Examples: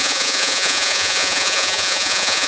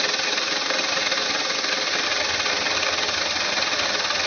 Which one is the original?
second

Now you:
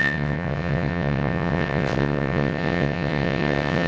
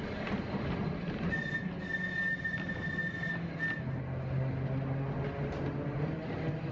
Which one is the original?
second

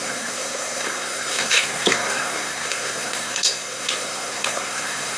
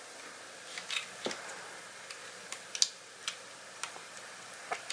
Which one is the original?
second